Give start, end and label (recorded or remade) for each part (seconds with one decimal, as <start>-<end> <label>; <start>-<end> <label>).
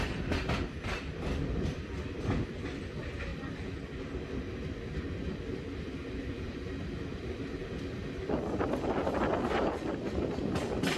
0.0-11.0 recorded